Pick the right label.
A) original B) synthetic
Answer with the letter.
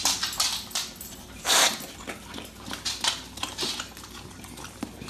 A